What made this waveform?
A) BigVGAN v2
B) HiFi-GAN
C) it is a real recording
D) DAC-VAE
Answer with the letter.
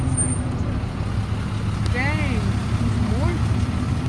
C